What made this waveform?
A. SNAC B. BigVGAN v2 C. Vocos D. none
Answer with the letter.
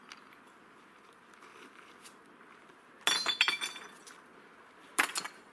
D